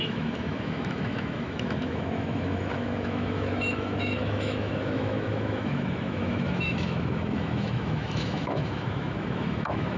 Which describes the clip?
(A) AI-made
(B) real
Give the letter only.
A